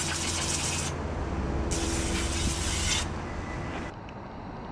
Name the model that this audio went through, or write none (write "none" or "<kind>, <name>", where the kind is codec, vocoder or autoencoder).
none